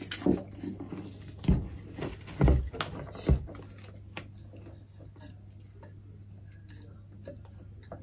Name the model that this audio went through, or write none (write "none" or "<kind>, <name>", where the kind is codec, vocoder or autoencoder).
none